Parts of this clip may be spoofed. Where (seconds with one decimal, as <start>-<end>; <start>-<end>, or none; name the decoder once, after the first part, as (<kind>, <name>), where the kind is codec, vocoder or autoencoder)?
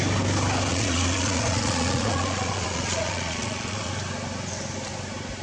0.7-3.9 (vocoder, Vocos)